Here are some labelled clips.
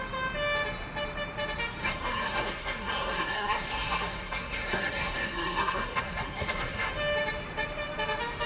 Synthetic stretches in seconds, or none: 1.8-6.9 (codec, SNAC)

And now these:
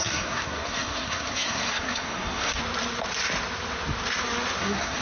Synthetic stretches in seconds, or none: 0.0-2.6 (codec, SNAC); 4.6-5.0

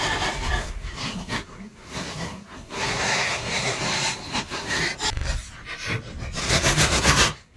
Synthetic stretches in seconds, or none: 0.6-3.8 (codec, SNAC); 4.3-4.8; 6.4-7.6

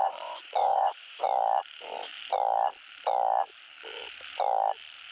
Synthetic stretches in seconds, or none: 0.0-1.2 (vocoder, Vocos)

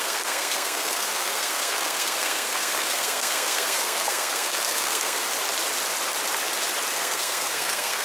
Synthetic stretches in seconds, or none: 0.0-5.2 (codec, SNAC); 6.9-8.0

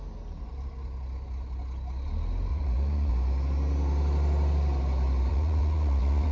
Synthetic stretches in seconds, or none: 2.5-3.1 (vocoder, Vocos); 5.3-6.3

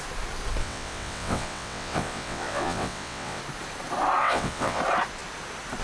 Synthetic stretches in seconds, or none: 0.6-3.4 (vocoder, WaveNeXt); 4.2-4.8

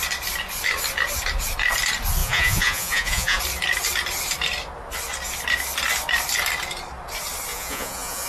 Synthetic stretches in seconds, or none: 2.2-3.4 (vocoder, Vocos); 7.5-8.3